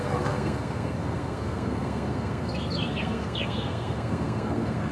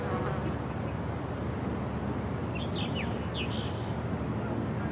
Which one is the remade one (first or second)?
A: first